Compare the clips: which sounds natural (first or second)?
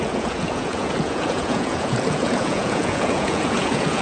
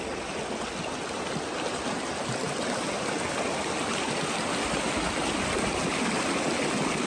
second